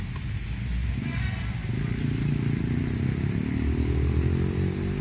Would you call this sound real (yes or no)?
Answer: yes